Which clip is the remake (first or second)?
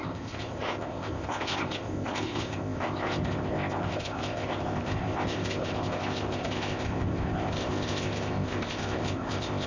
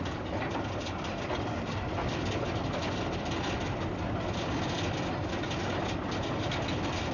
first